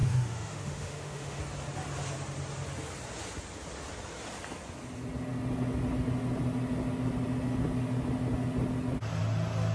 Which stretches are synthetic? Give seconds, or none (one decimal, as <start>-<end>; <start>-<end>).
0.0-1.4